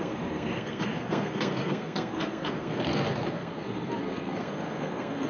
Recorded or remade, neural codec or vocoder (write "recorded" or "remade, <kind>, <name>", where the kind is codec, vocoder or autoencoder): remade, codec, SNAC